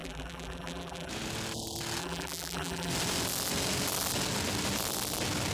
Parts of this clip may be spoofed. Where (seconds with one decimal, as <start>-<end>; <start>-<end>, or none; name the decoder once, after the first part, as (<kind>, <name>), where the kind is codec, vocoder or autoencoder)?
0.0-1.1 (vocoder, BigVGAN v2); 2.0-2.9